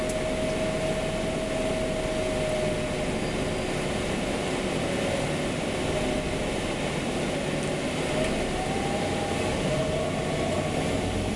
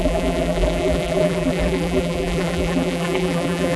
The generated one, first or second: second